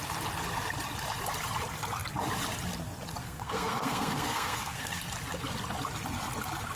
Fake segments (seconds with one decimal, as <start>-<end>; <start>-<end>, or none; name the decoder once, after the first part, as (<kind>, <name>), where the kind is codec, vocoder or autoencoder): 3.2-5.0 (codec, SNAC)